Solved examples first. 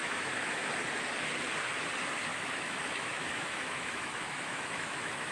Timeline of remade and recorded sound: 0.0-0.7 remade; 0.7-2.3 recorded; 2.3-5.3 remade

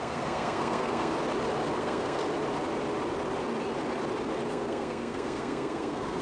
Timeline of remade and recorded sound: 0.0-1.1 remade; 1.1-1.8 recorded; 1.8-2.2 remade; 2.2-4.5 recorded; 4.5-6.2 remade

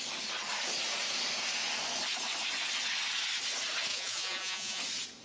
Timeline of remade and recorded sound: 0.0-3.9 recorded; 3.9-4.8 remade; 4.8-5.2 recorded

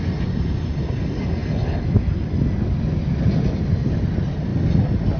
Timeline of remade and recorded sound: 0.0-5.2 recorded

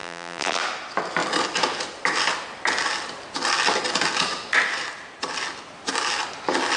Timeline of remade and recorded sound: 0.0-0.6 remade; 0.6-6.8 recorded